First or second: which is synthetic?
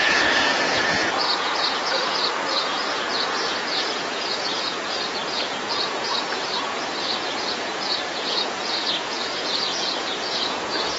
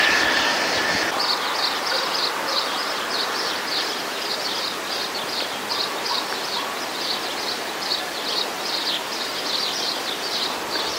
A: first